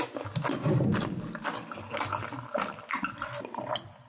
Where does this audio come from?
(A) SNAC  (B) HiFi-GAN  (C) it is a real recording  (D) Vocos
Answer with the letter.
C